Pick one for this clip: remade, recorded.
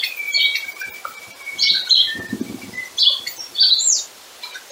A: remade